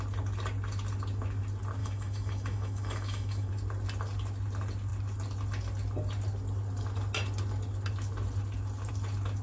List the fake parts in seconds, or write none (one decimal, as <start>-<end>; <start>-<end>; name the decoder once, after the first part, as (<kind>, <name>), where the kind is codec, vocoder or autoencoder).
1.8-3.5 (autoencoder, DAC-VAE)